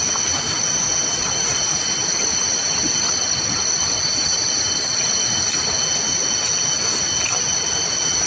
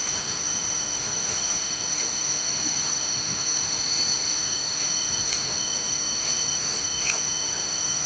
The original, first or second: first